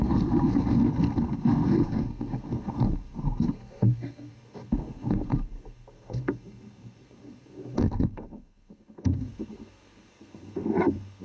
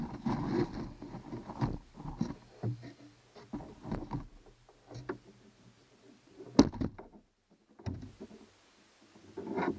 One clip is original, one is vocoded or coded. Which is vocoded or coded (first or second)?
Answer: first